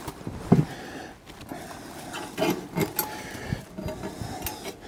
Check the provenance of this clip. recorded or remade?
recorded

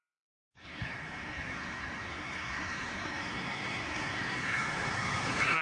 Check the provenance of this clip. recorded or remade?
remade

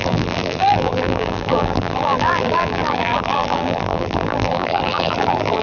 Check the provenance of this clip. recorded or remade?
remade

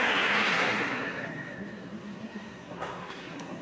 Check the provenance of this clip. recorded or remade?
remade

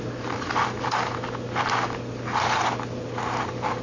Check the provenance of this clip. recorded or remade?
recorded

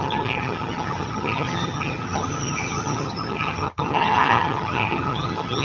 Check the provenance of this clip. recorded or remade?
remade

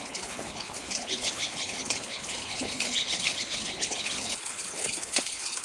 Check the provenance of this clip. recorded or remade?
remade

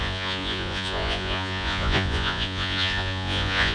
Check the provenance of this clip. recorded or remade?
remade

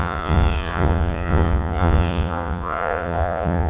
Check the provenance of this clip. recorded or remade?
remade